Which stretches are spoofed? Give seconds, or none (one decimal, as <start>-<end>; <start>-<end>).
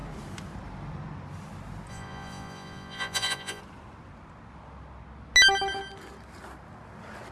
1.9-3.6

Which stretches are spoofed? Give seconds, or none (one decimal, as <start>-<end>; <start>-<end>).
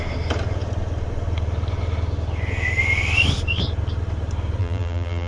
4.6-5.3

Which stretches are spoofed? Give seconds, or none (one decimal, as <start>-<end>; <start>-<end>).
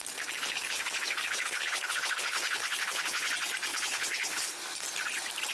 0.4-3.3; 3.7-4.6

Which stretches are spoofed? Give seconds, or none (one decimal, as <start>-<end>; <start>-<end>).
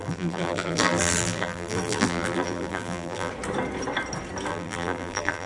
0.0-3.3; 4.5-5.5